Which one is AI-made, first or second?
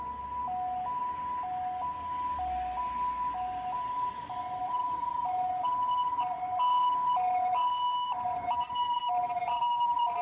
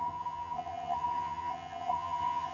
second